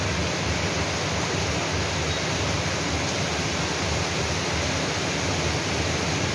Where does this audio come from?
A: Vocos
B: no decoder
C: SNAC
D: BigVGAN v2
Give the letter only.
B